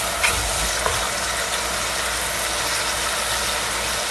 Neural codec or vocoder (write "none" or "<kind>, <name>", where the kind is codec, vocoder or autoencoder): none